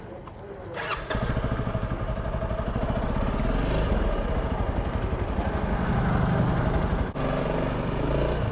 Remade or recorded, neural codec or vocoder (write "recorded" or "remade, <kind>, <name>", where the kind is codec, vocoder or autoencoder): recorded